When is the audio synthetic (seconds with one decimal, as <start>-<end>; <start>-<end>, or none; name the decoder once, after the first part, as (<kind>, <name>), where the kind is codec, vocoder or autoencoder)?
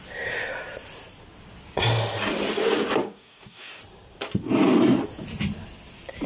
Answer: 3.0-3.8 (codec, DAC)